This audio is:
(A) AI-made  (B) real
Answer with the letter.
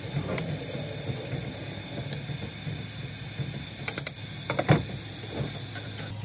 B